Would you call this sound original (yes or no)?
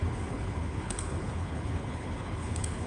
no